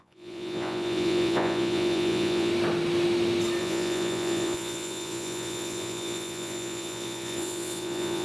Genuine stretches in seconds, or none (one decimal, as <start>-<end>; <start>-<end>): 2.5-3.6